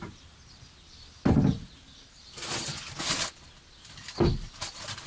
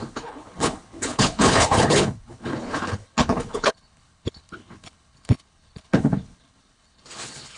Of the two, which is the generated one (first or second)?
second